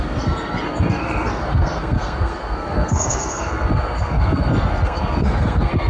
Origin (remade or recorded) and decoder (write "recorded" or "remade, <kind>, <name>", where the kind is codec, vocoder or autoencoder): remade, codec, SNAC